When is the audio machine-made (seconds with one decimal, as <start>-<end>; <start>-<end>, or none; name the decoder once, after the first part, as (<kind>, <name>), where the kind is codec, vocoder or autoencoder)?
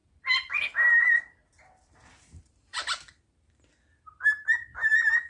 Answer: 0.0-3.2 (vocoder, BigVGAN v2)